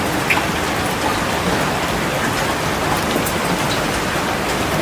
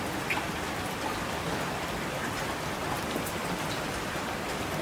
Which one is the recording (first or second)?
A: first